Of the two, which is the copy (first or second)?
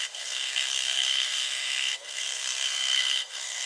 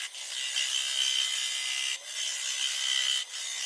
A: first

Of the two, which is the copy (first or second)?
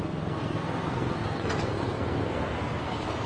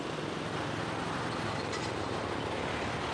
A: first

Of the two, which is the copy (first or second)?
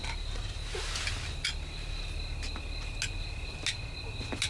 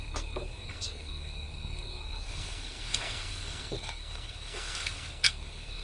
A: second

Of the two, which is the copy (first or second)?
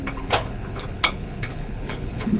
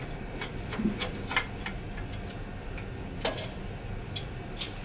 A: first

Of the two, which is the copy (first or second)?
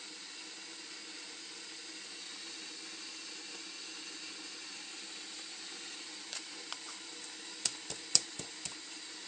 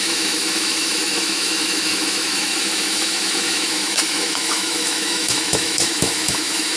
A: second